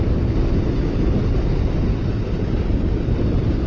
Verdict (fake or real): real